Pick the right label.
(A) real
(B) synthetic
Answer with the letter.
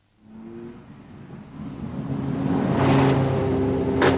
A